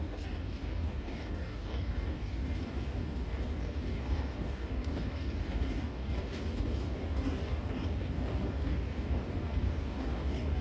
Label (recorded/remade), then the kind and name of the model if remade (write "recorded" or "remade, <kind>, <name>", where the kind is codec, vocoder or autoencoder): remade, codec, DAC